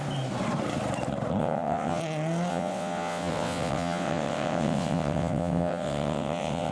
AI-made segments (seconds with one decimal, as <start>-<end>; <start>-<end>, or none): 1.4-2.0; 2.5-6.7